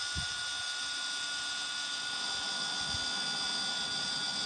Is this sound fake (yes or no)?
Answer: no